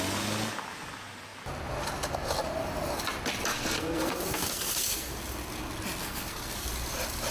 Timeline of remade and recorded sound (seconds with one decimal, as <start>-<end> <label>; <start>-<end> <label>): 0.0-3.5 recorded; 3.5-5.1 remade; 5.1-6.0 recorded; 6.0-6.7 remade; 6.7-7.3 recorded